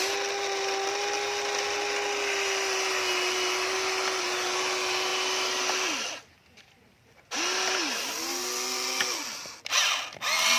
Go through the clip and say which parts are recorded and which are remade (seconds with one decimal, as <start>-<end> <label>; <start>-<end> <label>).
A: 0.0-10.6 recorded